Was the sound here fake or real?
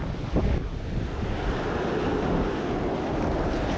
real